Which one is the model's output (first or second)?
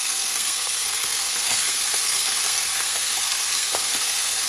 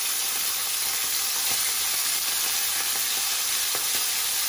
first